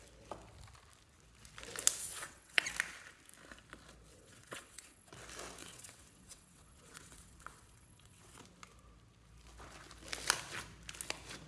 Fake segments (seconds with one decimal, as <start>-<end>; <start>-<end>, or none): 2.0-2.7; 4.1-5.1; 5.6-8.4